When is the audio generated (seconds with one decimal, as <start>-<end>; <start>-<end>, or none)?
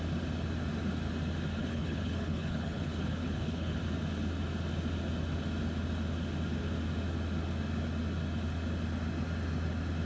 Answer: 1.6-3.8